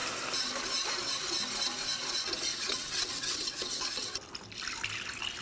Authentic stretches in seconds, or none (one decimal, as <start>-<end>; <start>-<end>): 0.0-2.5; 3.8-5.4